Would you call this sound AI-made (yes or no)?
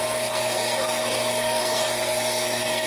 yes